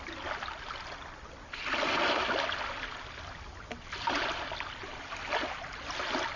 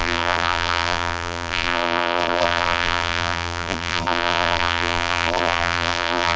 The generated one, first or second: second